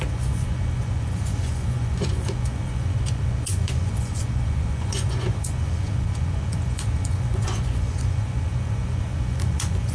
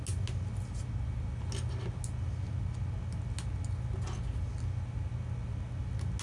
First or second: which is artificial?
first